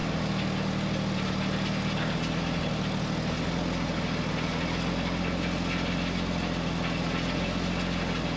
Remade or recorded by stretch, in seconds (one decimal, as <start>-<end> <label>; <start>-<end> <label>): 0.0-8.4 recorded